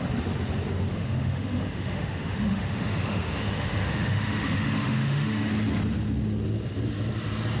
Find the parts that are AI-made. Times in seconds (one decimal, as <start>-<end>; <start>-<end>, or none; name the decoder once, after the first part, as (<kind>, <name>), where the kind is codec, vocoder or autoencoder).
0.9-5.5 (autoencoder, DAC-VAE)